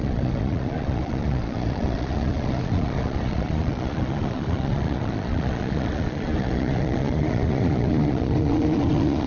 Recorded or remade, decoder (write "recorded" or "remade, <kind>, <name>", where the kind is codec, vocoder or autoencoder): remade, vocoder, Vocos